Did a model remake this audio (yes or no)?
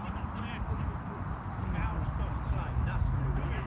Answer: no